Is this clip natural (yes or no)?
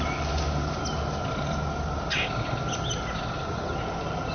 yes